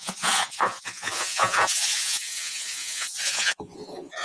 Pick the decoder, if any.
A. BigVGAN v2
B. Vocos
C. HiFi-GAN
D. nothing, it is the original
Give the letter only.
B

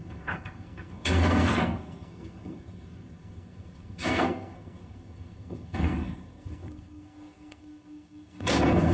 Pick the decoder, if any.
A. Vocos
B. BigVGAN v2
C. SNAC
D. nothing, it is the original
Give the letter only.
C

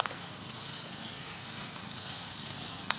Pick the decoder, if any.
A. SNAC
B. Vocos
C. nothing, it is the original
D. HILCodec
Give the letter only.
A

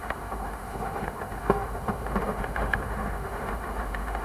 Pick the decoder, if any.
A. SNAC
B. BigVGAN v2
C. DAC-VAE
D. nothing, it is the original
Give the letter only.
C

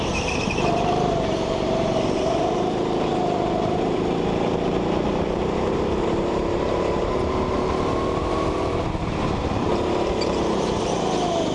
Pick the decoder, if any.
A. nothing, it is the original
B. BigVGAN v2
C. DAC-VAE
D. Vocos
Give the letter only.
B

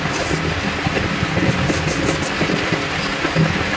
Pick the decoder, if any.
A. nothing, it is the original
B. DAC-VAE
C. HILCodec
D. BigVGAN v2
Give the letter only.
D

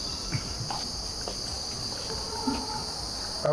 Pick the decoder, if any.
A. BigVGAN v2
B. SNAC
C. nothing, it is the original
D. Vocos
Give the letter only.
C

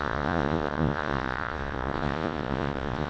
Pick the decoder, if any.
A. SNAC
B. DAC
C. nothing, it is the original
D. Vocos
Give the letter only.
D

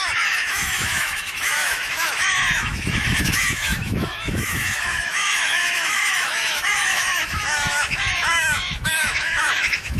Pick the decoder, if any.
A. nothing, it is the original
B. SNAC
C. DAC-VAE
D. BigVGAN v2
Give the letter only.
C